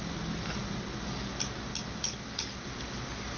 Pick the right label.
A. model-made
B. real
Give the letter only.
B